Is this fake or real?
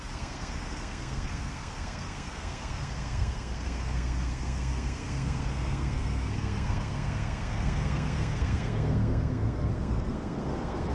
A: fake